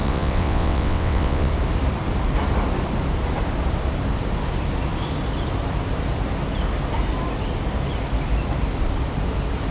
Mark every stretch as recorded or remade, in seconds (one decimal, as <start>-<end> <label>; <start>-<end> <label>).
0.0-1.5 remade; 1.5-9.7 recorded